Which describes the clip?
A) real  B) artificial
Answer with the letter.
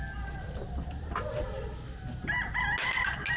A